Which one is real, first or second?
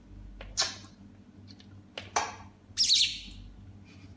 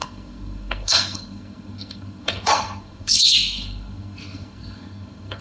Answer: first